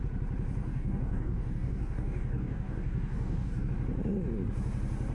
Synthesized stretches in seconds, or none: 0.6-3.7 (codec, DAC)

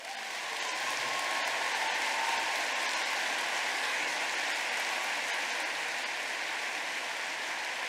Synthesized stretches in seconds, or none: 3.7-4.2 (codec, DAC)

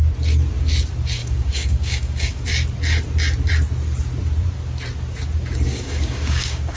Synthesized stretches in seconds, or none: 1.2-2.4 (codec, DAC); 5.7-6.8

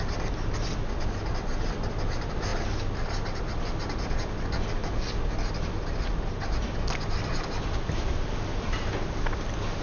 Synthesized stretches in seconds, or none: none